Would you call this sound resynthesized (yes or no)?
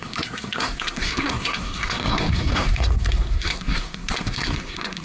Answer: yes